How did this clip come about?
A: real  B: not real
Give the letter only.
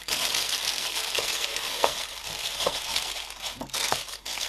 B